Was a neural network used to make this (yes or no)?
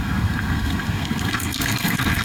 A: yes